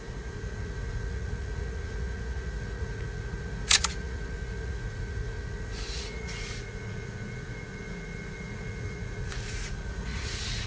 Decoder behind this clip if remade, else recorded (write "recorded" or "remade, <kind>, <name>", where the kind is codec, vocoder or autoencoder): remade, vocoder, Vocos